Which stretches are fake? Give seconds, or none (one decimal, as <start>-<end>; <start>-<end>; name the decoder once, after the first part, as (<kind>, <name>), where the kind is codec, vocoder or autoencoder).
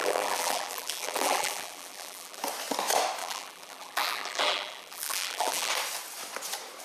0.0-2.4 (vocoder, BigVGAN v2); 3.2-5.7